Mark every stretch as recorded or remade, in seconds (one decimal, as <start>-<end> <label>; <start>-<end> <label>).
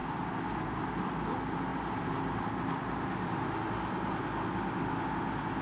0.0-5.6 recorded